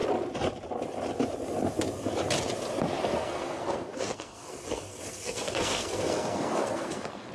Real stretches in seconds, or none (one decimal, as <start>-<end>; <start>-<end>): 0.0-3.1